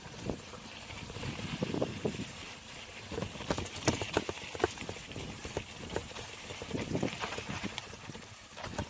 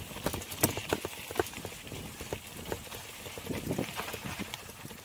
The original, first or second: second